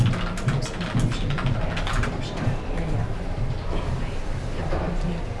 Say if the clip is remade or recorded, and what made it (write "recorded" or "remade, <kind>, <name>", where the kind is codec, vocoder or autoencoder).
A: recorded